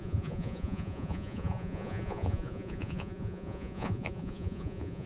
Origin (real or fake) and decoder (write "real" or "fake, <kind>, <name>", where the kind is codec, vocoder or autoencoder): fake, vocoder, Vocos